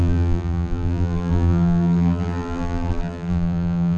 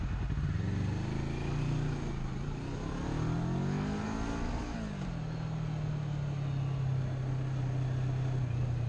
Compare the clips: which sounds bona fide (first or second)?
second